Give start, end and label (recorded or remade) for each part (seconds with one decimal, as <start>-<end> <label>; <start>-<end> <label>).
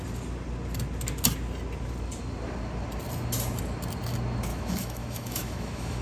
0.0-4.5 recorded; 4.5-6.0 remade